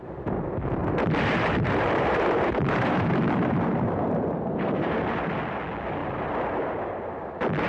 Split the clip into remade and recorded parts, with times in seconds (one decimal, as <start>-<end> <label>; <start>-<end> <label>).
0.0-0.8 recorded; 0.8-5.3 remade; 5.3-6.0 recorded; 6.0-7.7 remade